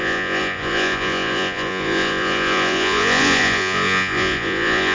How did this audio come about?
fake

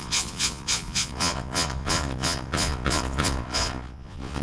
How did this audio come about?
fake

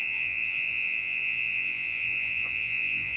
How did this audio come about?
fake